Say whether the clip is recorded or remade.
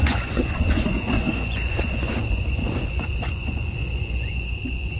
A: remade